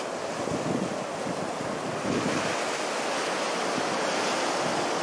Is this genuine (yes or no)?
yes